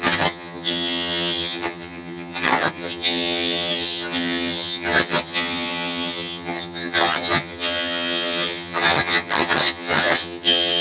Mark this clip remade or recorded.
remade